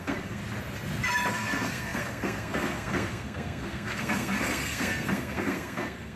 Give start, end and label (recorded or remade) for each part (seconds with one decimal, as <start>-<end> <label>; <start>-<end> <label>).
0.0-0.4 remade; 0.4-1.3 recorded; 1.3-6.2 remade